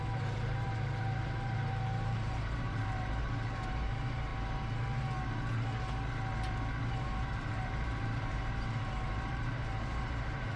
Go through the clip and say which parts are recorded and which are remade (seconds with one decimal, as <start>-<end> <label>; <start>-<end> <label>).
0.0-4.3 remade; 4.3-6.9 recorded; 6.9-10.6 remade